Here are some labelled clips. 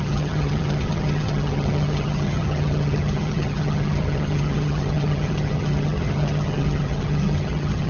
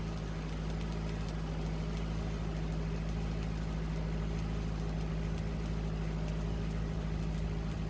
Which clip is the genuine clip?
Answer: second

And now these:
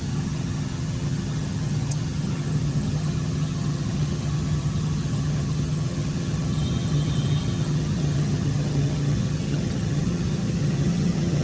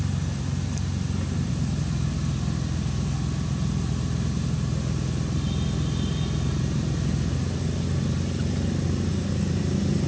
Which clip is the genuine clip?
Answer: second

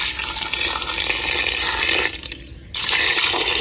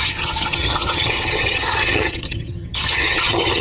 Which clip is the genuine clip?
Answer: first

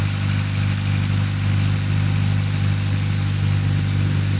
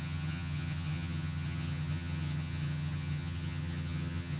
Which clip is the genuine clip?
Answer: first